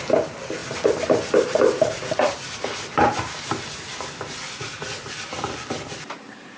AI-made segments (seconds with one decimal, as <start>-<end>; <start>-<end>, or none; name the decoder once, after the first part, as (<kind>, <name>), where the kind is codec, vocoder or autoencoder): none